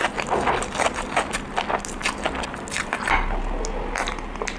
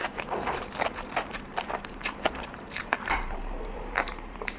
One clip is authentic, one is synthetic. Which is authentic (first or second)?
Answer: first